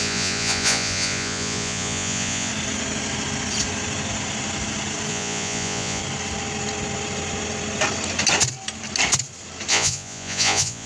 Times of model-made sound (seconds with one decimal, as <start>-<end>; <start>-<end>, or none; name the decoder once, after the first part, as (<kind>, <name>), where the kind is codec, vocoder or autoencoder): 0.0-2.5 (vocoder, Vocos); 5.1-6.0; 9.7-10.9